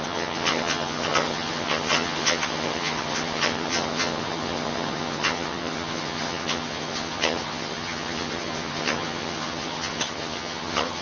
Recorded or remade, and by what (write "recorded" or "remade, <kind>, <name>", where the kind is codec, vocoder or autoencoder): remade, vocoder, HiFi-GAN